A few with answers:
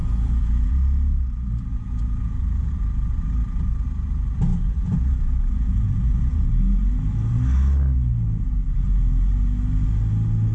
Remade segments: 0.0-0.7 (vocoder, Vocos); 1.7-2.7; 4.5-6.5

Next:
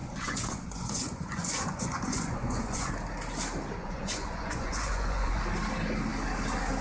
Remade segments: 0.0-2.9 (vocoder, Vocos); 3.8-5.4

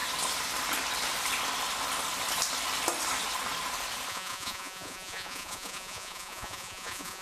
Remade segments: 4.1-7.2 (vocoder, Vocos)

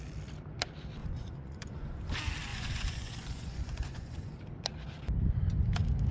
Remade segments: 1.0-2.0 (vocoder, Vocos); 2.5-4.4

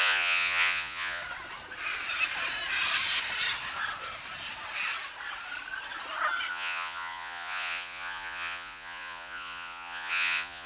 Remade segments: 0.0-1.2 (vocoder, Vocos); 6.5-10.7

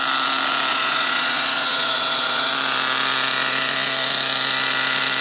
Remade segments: 0.7-2.5 (vocoder, Vocos)

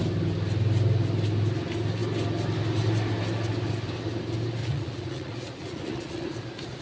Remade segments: 4.6-6.8 (vocoder, Vocos)

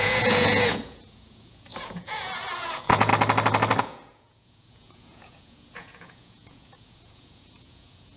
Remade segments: 0.0-3.1 (vocoder, Vocos); 3.8-8.2